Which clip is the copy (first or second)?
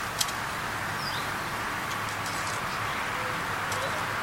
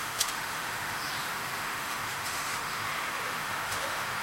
second